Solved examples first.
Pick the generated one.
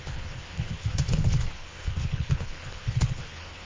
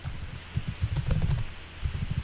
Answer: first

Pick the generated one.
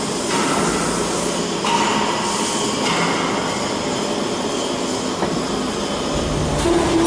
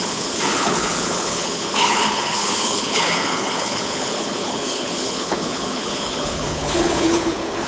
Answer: second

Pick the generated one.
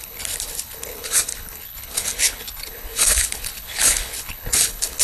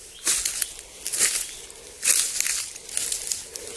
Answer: first